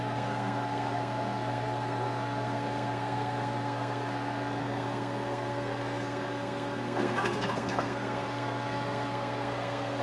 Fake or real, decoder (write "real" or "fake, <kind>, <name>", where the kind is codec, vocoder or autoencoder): fake, codec, SNAC